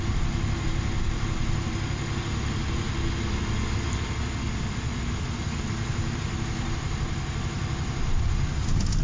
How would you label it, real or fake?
real